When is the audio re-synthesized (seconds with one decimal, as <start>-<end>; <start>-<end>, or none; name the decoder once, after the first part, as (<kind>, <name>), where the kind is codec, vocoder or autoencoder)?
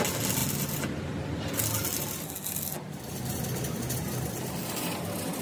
none